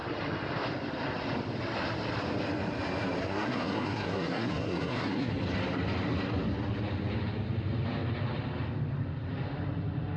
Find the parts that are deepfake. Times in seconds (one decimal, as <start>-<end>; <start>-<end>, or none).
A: 3.2-5.3